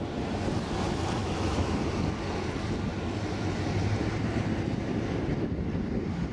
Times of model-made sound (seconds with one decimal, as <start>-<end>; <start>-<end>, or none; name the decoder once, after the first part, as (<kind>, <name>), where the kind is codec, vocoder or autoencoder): 1.2-1.8 (autoencoder, DAC-VAE)